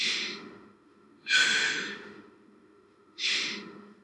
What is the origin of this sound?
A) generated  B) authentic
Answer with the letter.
A